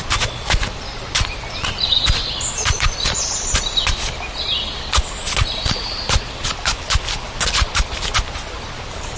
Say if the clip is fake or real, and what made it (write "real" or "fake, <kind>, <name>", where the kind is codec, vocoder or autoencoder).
real